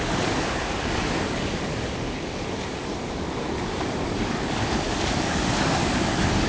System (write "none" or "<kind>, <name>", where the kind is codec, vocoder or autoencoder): codec, DAC